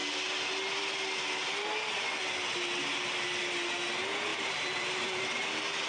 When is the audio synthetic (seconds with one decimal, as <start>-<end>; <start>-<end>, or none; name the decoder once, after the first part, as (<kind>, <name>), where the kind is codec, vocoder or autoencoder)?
4.3-5.9 (vocoder, BigVGAN v2)